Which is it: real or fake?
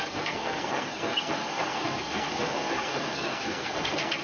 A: fake